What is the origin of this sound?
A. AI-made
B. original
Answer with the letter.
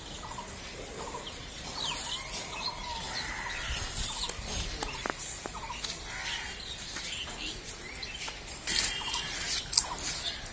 B